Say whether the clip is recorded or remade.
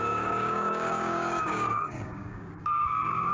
remade